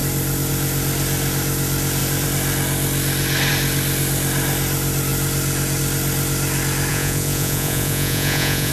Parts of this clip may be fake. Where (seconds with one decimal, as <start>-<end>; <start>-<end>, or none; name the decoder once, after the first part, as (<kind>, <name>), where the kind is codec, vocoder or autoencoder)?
6.9-8.7 (vocoder, Vocos)